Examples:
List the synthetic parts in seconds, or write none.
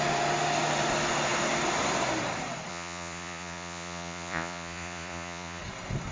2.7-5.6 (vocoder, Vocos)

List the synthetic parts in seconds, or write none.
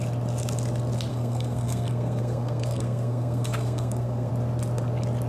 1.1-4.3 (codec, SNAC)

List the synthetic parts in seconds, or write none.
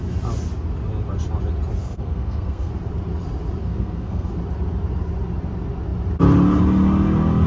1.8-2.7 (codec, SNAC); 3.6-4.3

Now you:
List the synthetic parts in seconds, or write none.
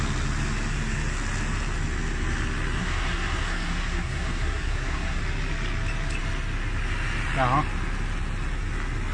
2.8-5.2 (codec, SNAC)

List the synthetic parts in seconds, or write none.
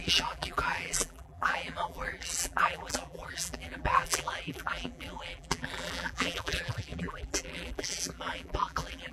0.0-9.1 (vocoder, BigVGAN v2)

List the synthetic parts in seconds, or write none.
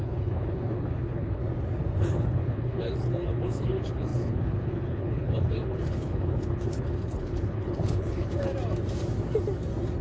0.0-1.4 (codec, HILCodec); 2.0-8.5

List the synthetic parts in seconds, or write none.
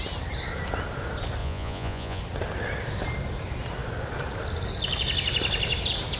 1.4-2.2 (vocoder, Vocos)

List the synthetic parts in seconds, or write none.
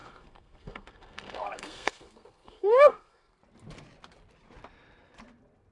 0.0-3.4 (codec, SNAC)